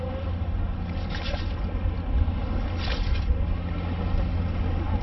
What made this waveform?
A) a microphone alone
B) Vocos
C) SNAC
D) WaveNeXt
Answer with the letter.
A